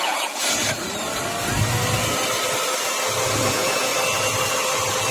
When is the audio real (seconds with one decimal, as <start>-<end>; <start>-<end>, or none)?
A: 0.4-3.5; 3.9-5.1